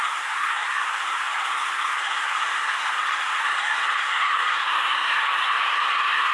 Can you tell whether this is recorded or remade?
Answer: remade